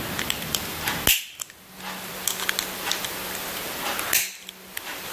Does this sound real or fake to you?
real